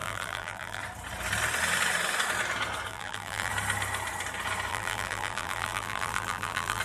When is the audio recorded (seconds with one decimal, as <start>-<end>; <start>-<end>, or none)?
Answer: 0.8-2.9; 3.5-4.7